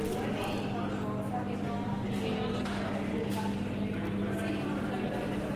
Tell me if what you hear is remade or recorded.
recorded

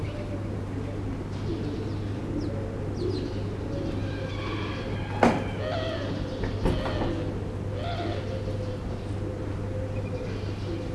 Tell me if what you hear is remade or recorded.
recorded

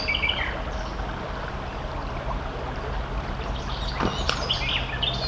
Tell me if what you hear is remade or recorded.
recorded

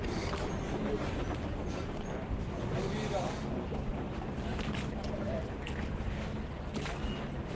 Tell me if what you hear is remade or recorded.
recorded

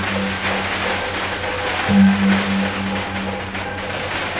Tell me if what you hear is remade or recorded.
recorded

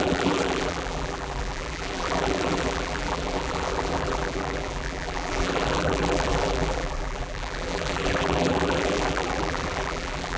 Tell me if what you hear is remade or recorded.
remade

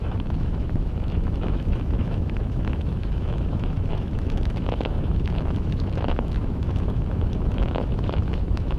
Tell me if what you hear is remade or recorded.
remade